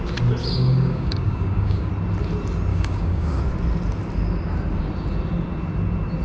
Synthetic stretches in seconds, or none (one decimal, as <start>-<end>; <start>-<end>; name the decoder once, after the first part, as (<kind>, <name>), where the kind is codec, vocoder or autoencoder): 0.4-1.9 (codec, DAC); 2.7-3.4